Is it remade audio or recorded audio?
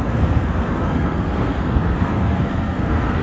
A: remade